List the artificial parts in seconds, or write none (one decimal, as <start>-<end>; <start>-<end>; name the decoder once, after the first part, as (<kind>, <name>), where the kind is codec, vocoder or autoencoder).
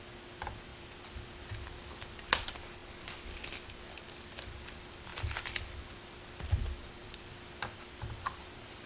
0.7-1.4 (vocoder, BigVGAN v2); 7.0-8.9